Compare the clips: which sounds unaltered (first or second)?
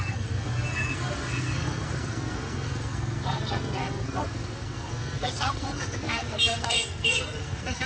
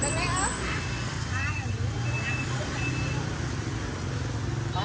second